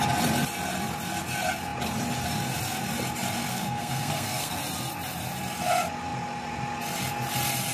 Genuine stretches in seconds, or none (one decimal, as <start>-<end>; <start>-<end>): 0.0-3.5; 4.6-7.7